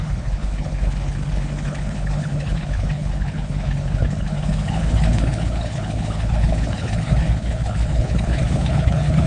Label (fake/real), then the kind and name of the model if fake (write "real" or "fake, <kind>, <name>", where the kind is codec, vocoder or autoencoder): fake, codec, HILCodec